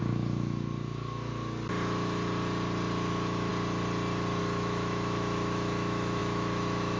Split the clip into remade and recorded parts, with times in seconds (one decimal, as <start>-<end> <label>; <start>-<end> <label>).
0.0-1.3 remade; 1.3-3.1 recorded; 3.1-3.5 remade; 3.5-4.4 recorded; 4.4-7.0 remade